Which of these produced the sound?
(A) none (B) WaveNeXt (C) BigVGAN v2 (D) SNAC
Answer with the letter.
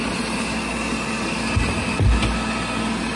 A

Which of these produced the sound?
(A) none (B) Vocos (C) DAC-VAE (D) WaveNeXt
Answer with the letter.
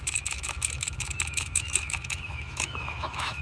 C